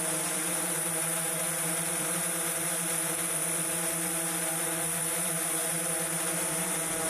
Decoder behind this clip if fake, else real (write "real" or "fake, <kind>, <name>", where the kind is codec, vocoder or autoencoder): fake, vocoder, BigVGAN v2